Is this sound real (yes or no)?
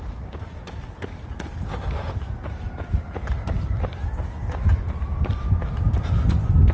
yes